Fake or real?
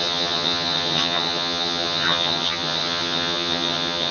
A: fake